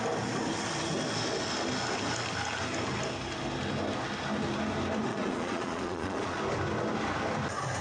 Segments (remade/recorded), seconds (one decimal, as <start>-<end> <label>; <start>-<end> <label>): 0.0-5.1 recorded; 5.1-6.4 remade; 6.4-7.8 recorded